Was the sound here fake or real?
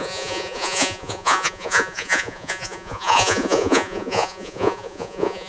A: fake